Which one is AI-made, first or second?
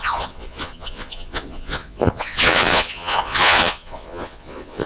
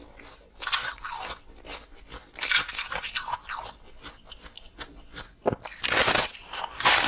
first